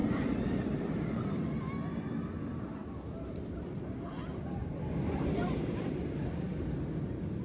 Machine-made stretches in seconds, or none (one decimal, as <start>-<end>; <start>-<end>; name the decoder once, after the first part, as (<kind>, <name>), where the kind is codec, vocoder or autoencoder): 0.0-1.3 (vocoder, BigVGAN v2); 5.6-6.3